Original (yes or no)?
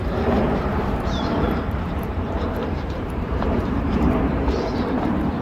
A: no